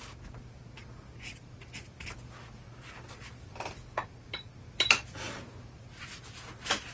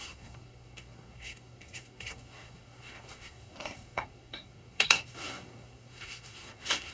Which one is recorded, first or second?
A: first